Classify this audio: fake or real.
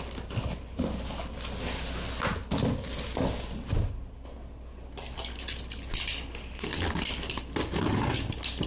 real